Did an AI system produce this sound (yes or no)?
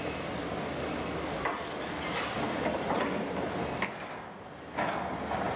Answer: no